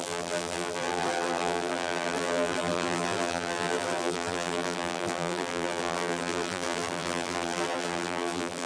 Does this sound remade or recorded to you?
remade